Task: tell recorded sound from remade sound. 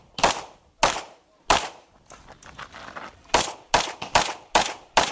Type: recorded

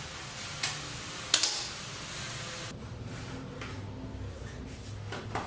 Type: recorded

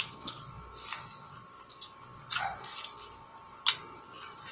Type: recorded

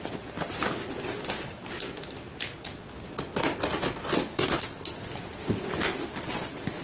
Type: recorded